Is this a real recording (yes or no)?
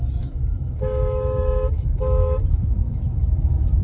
no